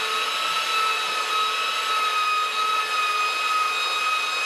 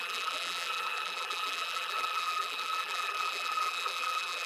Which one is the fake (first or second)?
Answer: second